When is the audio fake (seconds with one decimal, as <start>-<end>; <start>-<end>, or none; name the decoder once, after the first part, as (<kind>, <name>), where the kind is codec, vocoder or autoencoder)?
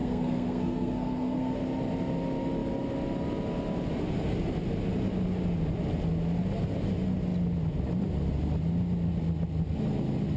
0.0-1.6 (codec, SNAC)